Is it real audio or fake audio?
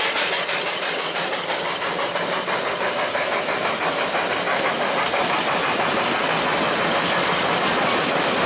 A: real